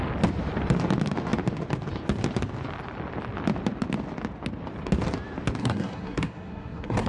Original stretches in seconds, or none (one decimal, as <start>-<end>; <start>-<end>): 0.0-5.6